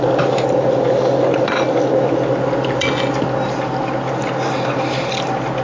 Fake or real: real